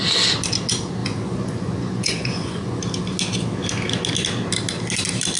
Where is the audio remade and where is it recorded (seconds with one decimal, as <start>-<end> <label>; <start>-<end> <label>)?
0.0-1.0 recorded; 1.0-2.8 remade; 2.8-5.4 recorded